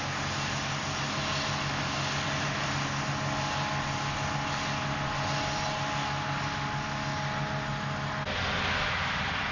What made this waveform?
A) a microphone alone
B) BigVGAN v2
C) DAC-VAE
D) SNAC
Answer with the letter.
A